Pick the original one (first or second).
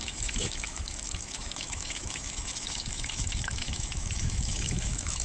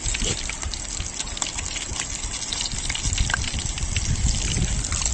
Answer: second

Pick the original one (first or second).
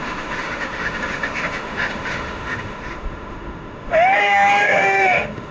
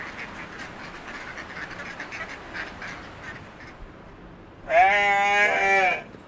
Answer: second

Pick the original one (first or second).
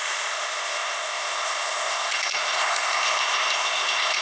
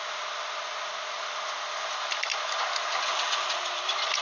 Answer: second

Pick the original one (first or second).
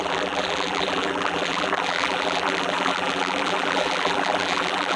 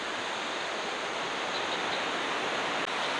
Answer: second